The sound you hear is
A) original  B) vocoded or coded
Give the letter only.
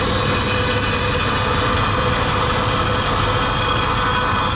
A